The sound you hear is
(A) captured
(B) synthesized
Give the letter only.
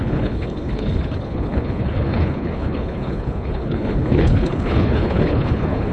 B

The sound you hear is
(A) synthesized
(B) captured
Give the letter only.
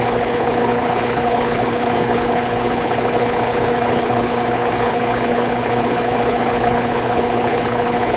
A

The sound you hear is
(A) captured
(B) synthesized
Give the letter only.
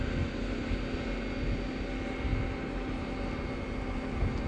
A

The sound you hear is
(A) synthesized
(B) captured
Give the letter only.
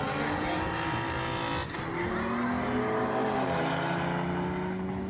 B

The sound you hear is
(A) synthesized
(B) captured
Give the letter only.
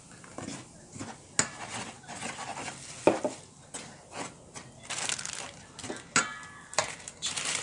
B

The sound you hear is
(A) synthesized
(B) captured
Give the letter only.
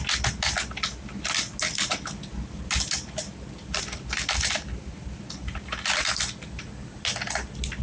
B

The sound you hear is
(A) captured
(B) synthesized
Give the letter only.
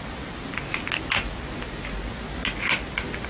A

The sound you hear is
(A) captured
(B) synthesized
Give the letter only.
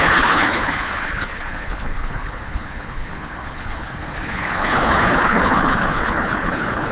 B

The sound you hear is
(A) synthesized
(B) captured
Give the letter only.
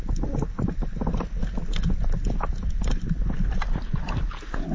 B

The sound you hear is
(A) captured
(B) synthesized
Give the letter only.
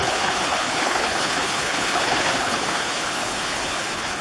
B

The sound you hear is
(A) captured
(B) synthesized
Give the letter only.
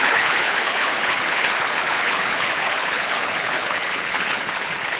B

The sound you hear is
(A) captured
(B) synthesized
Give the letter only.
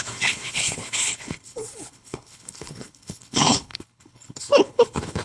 B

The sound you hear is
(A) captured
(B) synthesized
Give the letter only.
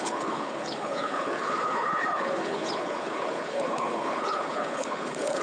B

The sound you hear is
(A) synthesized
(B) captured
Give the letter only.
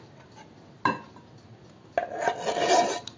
B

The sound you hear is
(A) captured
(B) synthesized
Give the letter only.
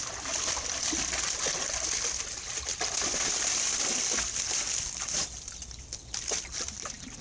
A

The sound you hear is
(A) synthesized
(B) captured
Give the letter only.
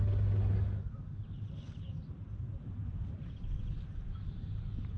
B